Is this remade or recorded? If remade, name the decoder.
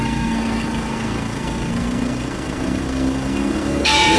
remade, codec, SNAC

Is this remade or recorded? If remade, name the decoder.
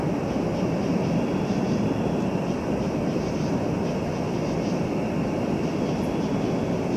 recorded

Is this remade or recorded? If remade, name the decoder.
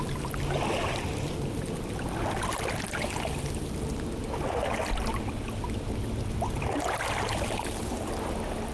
recorded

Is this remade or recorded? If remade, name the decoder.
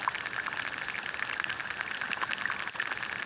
recorded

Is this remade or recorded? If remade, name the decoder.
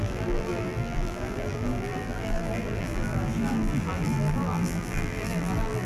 remade, vocoder, BigVGAN v2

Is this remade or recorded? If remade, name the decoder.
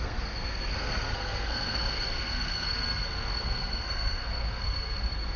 remade, codec, SNAC